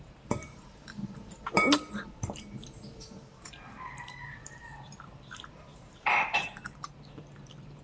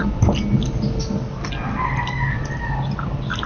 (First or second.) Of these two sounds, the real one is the second